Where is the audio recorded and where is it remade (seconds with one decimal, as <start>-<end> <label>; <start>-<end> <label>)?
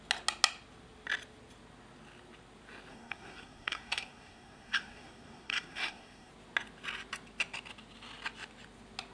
0.0-2.9 recorded; 2.9-6.3 remade; 6.3-9.1 recorded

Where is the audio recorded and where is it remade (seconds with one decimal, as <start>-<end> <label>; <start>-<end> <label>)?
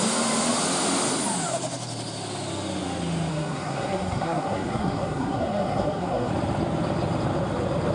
0.0-3.3 recorded; 3.3-6.3 remade; 6.3-7.9 recorded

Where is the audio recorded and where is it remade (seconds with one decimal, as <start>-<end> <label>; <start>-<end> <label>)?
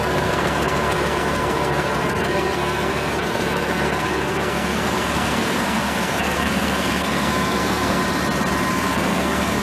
0.0-8.0 remade; 8.0-8.7 recorded; 8.7-9.6 remade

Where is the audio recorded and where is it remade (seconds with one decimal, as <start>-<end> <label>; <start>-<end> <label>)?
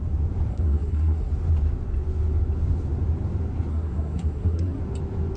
0.0-0.5 recorded; 0.5-1.3 remade; 1.3-3.7 recorded; 3.7-4.8 remade; 4.8-5.4 recorded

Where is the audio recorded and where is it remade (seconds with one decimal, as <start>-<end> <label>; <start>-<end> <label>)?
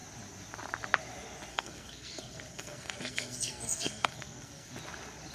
0.0-1.5 recorded; 1.5-4.7 remade; 4.7-5.3 recorded